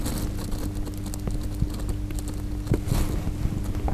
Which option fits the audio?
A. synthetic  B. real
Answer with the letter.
B